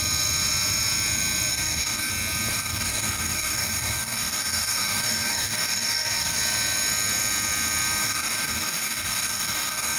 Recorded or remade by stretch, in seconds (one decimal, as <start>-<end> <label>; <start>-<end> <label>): 0.0-1.5 recorded; 1.5-2.1 remade; 2.1-2.5 recorded; 2.5-6.4 remade; 6.4-8.0 recorded; 8.0-10.0 remade